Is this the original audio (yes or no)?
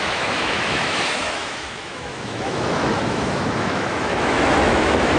no